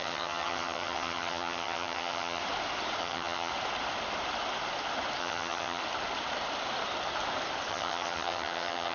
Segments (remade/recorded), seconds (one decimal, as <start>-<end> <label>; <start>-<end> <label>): 0.0-2.4 remade; 2.4-3.0 recorded; 3.0-3.5 remade; 3.5-5.2 recorded; 5.2-5.8 remade; 5.8-7.7 recorded; 7.7-8.9 remade